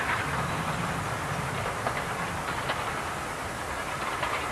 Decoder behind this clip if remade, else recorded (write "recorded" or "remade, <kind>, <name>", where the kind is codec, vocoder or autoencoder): recorded